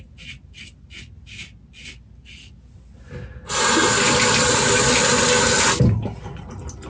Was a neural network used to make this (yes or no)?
no